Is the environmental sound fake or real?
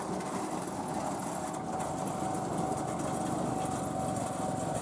real